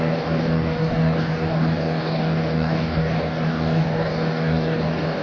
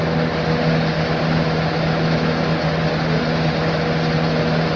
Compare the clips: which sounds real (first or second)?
second